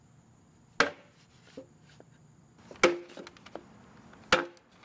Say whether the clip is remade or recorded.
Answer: recorded